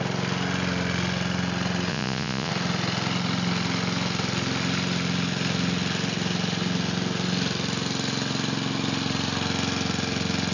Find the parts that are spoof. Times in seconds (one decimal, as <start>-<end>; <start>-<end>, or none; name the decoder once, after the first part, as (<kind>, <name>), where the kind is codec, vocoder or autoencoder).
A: 1.9-2.5 (vocoder, Vocos)